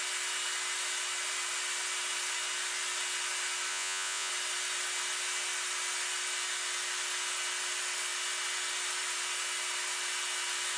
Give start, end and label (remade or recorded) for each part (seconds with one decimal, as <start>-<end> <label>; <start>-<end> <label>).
0.0-3.7 recorded; 3.7-4.3 remade; 4.3-10.8 recorded